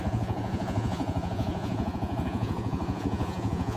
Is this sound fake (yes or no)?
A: yes